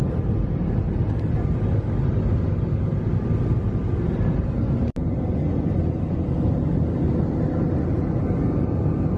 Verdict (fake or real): real